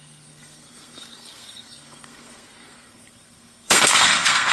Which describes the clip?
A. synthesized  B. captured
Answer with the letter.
A